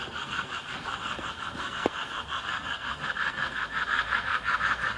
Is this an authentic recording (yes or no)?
no